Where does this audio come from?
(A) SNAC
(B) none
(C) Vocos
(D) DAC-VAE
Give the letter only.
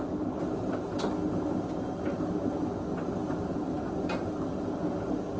B